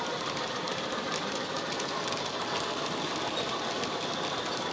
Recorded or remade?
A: remade